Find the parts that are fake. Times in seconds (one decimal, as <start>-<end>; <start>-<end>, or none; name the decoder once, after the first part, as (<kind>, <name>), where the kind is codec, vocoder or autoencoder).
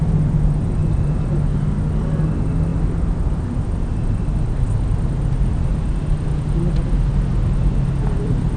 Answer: none